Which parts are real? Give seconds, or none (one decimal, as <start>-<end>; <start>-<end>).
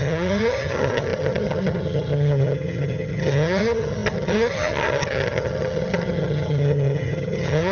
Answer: none